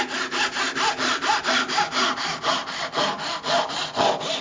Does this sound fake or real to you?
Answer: real